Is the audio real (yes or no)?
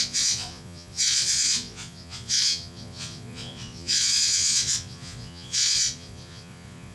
no